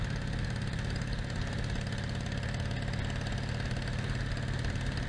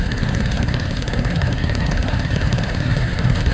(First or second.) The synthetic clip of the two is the second